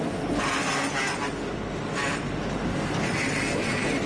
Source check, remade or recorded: recorded